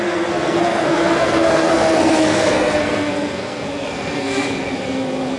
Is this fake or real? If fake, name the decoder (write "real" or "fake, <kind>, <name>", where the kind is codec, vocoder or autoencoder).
fake, codec, SNAC